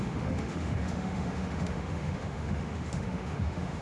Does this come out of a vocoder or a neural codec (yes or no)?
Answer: yes